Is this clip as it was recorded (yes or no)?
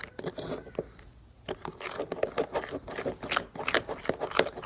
yes